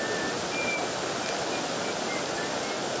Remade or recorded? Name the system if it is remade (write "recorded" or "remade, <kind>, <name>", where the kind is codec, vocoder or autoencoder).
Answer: recorded